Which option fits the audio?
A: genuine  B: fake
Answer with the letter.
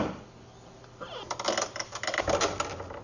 A